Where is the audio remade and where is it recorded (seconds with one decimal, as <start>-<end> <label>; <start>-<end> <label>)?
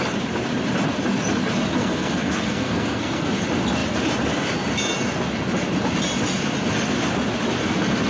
0.0-1.8 recorded; 1.8-3.3 remade; 3.3-8.1 recorded